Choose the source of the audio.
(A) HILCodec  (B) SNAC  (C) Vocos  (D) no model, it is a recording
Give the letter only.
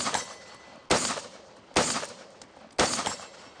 D